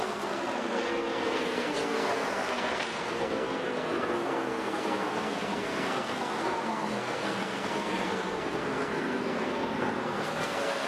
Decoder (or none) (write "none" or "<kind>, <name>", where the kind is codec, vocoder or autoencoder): codec, SNAC